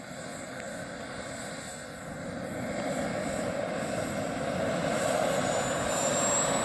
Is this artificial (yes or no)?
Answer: no